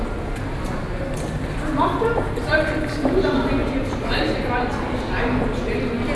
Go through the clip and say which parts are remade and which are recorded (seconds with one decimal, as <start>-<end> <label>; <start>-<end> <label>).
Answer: 0.0-6.2 recorded